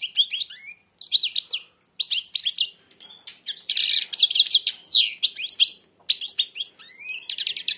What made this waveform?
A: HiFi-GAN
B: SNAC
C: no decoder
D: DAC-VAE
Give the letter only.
C